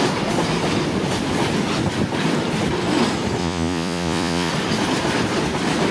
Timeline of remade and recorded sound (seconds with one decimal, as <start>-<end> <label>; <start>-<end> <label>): 0.0-3.4 recorded; 3.4-4.5 remade; 4.5-5.9 recorded

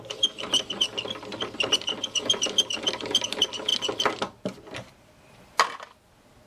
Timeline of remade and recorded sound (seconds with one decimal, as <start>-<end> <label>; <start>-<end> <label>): 0.0-6.5 recorded

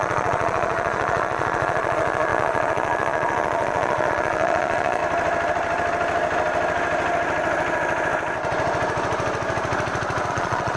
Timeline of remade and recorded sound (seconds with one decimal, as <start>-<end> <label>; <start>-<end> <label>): 0.0-5.0 remade; 5.0-10.3 recorded; 10.3-10.8 remade

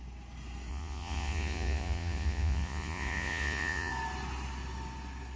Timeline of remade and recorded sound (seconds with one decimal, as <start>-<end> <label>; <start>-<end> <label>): 0.0-0.7 recorded; 0.7-3.9 remade; 3.9-5.4 recorded